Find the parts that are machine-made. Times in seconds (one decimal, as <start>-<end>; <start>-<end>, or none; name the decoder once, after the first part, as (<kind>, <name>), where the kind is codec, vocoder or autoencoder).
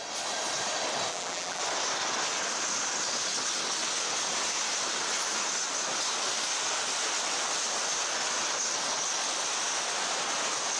1.1-1.6 (vocoder, BigVGAN v2)